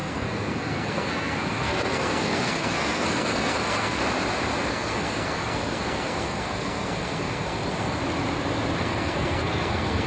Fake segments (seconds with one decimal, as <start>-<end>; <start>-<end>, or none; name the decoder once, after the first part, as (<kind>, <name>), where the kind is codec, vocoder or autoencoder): 0.0-4.0 (codec, SNAC); 4.7-8.0; 8.8-10.1